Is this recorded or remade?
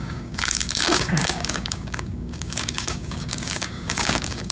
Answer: remade